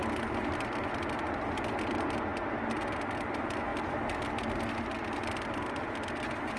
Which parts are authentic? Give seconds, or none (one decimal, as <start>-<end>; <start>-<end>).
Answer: 0.0-6.6